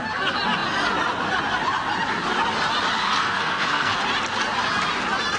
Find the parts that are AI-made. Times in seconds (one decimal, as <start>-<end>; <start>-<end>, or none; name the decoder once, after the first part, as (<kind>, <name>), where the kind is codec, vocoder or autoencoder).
3.0-4.0 (codec, SNAC)